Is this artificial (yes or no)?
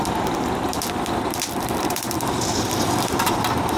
yes